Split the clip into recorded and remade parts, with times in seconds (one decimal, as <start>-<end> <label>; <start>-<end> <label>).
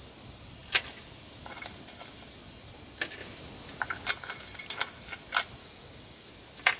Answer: 0.0-5.6 recorded; 5.6-6.3 remade; 6.3-6.8 recorded